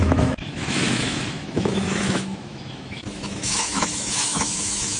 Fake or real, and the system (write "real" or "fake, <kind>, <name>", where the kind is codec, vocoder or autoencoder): fake, autoencoder, DAC-VAE